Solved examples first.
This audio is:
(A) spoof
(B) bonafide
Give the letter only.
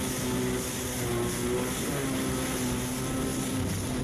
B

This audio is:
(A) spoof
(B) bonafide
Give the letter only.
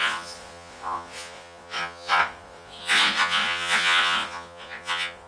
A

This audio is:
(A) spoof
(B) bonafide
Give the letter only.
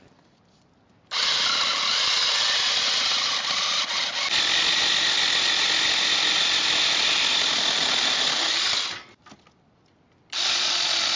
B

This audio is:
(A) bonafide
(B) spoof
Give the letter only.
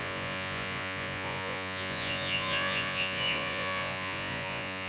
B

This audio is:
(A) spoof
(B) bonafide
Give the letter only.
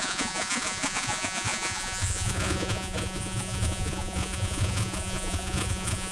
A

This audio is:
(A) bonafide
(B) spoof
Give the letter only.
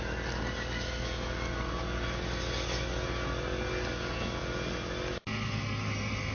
A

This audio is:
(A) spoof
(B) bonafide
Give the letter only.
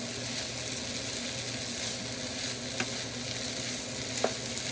B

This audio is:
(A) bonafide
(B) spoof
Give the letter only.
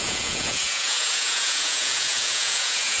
B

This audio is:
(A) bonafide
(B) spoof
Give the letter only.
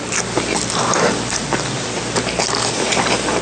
A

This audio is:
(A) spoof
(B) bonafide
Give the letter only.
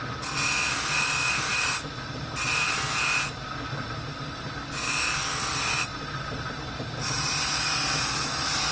B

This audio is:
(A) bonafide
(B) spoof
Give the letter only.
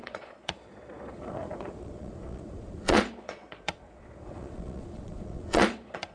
B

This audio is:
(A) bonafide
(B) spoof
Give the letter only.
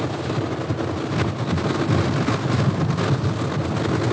A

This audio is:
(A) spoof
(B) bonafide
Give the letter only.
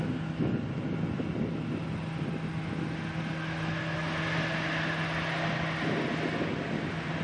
B